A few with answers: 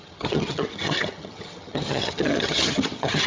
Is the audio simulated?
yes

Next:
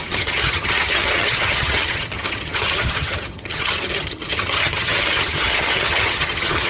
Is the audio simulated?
yes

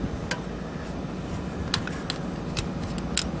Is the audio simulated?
no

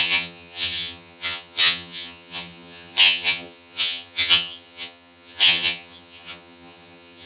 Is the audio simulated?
yes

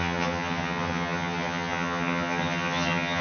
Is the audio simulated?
yes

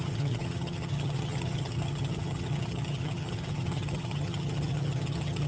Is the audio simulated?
yes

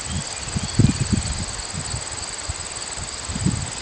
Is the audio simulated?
no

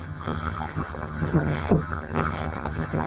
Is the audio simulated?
yes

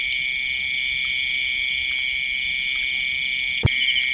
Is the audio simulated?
no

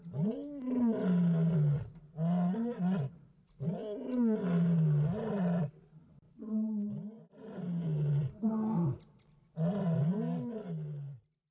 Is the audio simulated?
no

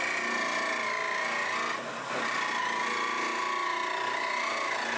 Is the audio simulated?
no